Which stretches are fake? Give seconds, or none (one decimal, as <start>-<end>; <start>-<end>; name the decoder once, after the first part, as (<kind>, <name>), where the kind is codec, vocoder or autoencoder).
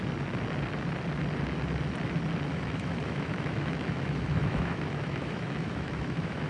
2.5-6.5 (autoencoder, DAC-VAE)